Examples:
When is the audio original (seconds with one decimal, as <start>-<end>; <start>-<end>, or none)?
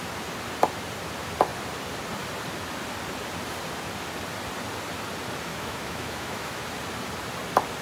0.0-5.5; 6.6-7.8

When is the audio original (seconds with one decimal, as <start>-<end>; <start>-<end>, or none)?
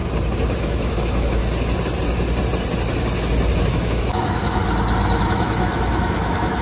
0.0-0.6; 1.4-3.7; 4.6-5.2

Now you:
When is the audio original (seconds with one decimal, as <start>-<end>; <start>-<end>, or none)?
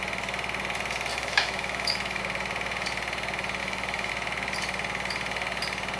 0.0-1.1; 2.2-3.6; 4.1-6.0